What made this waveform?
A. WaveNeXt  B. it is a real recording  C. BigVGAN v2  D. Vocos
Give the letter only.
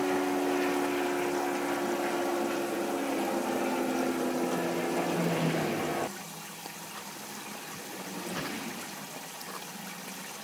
B